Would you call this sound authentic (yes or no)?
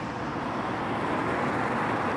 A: yes